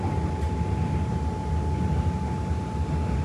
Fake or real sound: real